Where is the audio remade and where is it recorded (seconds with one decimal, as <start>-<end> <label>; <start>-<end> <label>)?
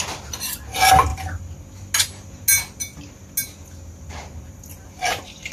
0.0-1.1 remade; 1.1-4.4 recorded; 4.4-5.5 remade